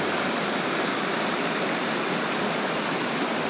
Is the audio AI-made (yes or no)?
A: no